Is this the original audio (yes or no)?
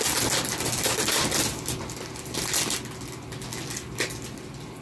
yes